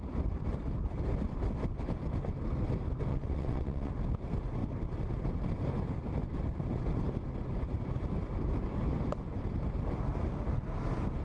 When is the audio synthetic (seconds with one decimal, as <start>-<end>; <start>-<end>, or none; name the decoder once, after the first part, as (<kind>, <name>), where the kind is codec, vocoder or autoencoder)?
3.1-3.9 (vocoder, WaveNeXt)

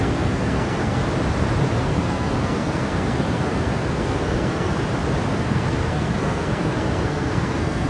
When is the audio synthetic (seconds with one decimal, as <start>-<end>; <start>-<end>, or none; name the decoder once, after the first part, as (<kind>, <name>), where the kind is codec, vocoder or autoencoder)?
0.0-1.0 (codec, SNAC); 1.8-4.7; 5.4-7.9

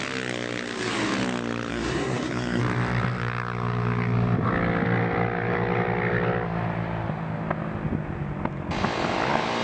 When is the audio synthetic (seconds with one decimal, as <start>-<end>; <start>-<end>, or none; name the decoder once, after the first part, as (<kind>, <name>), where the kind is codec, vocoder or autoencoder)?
1.7-2.6 (codec, SNAC)

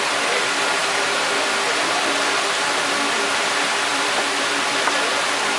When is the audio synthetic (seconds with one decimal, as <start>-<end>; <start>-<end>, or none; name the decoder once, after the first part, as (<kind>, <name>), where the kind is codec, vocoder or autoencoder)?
3.9-4.6 (vocoder, BigVGAN v2)

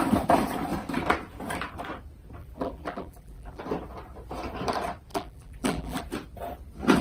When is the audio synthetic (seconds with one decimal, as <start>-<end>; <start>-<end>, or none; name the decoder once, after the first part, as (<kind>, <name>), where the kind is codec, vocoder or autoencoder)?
2.4-3.6 (vocoder, BigVGAN v2); 5.1-6.0